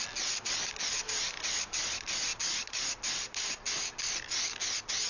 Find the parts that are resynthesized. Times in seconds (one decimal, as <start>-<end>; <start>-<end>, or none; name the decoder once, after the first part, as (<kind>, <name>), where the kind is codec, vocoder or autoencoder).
none